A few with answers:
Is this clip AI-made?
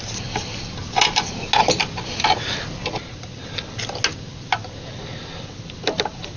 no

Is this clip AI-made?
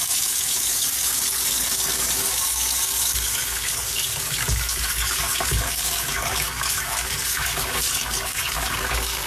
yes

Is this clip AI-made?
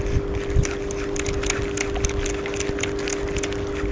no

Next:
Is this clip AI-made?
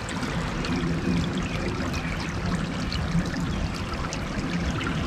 no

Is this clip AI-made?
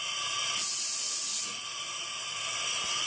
no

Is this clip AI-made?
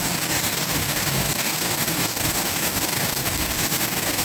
yes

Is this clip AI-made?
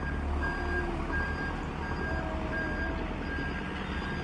no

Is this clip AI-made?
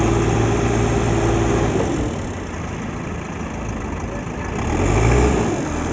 no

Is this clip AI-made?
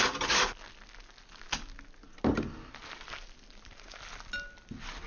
no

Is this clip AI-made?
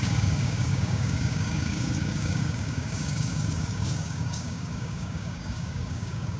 yes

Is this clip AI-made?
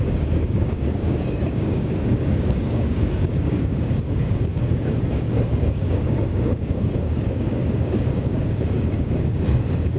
yes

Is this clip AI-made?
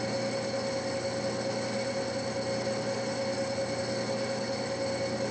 no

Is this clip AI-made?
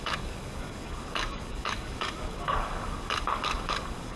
yes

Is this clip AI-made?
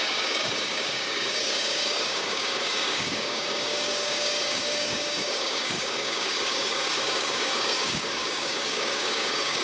yes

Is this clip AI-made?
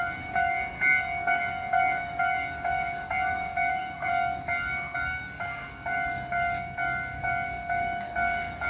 yes